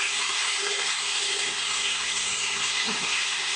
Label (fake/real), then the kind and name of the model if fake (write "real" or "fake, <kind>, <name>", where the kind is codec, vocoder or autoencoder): fake, codec, SNAC